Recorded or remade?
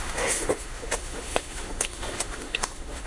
remade